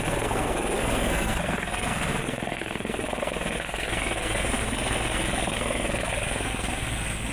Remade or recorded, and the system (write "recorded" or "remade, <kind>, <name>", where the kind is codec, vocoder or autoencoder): remade, codec, SNAC